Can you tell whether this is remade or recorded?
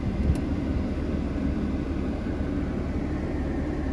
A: recorded